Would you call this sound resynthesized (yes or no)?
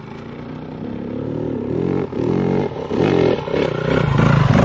no